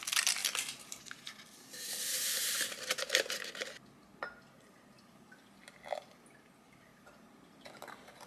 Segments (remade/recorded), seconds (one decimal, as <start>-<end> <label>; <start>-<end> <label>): 0.0-8.3 recorded